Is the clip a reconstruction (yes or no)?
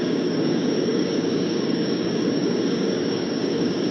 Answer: yes